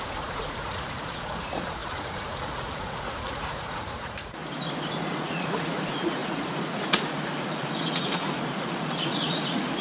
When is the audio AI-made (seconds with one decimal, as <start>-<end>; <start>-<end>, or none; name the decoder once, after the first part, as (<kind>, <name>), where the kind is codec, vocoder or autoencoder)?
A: 0.0-4.4 (vocoder, Vocos); 4.9-9.8